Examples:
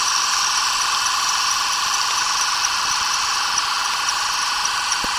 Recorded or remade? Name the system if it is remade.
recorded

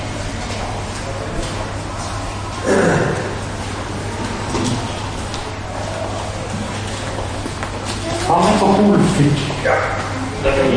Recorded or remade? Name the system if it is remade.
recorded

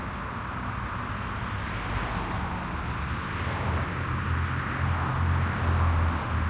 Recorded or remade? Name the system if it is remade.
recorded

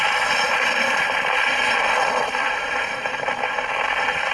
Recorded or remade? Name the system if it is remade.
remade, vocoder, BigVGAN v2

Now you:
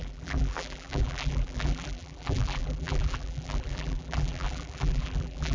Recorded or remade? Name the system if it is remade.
remade, vocoder, BigVGAN v2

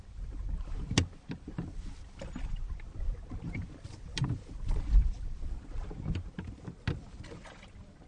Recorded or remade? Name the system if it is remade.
recorded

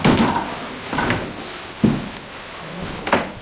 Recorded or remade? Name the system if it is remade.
recorded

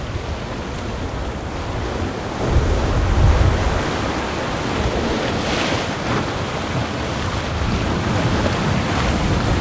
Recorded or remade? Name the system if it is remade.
recorded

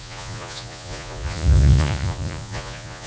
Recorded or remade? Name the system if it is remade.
remade, vocoder, Vocos